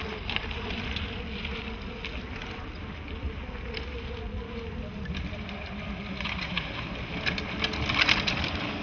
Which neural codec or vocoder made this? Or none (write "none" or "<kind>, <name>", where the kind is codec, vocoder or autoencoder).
none